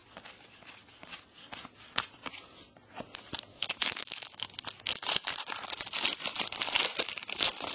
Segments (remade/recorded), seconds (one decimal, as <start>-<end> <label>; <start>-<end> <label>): 0.0-3.5 recorded; 3.5-4.5 remade; 4.5-7.7 recorded